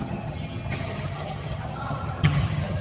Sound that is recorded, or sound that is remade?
remade